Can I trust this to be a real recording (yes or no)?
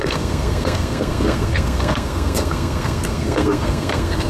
no